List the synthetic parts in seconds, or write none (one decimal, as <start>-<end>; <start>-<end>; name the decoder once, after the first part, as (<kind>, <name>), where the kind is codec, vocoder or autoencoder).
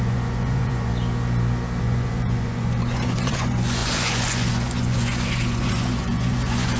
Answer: 0.0-0.9 (vocoder, Vocos); 1.8-6.8